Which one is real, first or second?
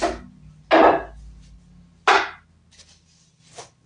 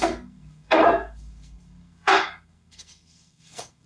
first